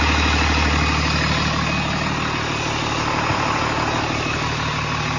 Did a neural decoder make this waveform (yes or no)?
no